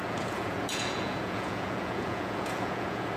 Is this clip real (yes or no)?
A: no